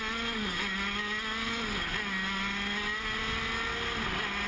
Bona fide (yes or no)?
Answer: yes